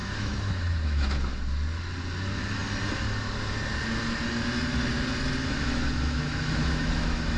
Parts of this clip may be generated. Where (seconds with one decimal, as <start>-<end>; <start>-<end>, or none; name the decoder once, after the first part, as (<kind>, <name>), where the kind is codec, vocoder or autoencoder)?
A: 0.0-1.4 (autoencoder, DAC-VAE); 5.4-7.4